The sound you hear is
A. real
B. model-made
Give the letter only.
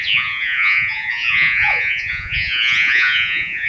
B